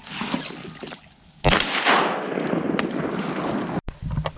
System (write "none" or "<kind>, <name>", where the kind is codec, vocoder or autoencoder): none